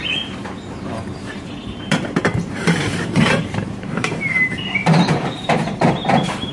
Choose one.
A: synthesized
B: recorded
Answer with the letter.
A